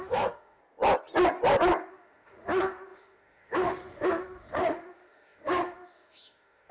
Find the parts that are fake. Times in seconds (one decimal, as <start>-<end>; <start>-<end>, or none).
0.0-0.6; 1.9-6.7